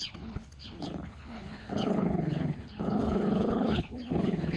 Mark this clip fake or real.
fake